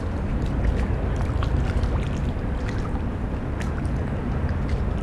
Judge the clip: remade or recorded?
recorded